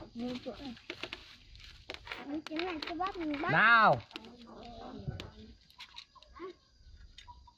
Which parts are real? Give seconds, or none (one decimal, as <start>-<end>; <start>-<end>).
1.2-5.8